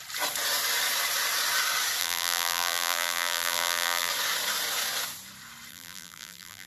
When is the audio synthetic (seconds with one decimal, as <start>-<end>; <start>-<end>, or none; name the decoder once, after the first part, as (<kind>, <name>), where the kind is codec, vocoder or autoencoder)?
2.0-4.1 (vocoder, BigVGAN v2); 5.7-6.7